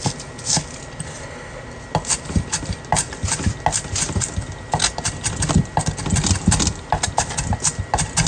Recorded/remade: recorded